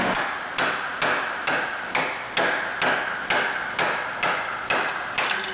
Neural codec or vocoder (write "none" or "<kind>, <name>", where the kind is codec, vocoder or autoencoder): none